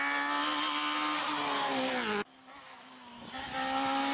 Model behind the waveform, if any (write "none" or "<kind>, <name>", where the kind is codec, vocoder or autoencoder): none